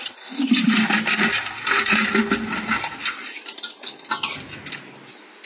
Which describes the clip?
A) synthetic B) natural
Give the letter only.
B